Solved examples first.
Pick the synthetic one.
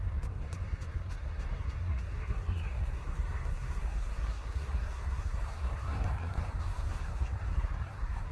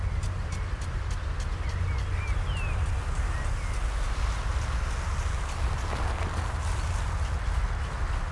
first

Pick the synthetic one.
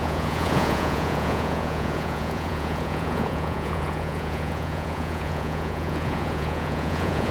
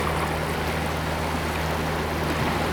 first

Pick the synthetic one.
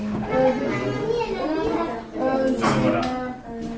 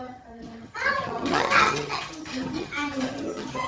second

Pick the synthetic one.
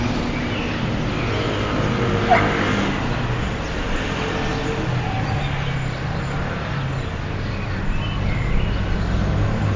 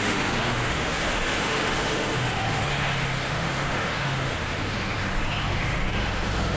second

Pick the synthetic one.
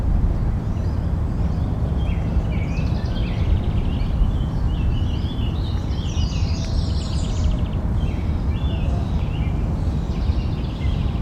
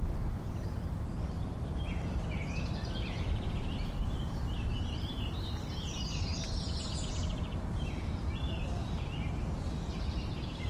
second